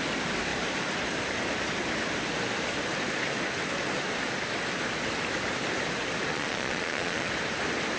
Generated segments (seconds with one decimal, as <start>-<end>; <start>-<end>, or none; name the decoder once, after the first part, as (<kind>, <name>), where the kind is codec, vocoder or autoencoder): 6.3-7.3 (vocoder, Vocos)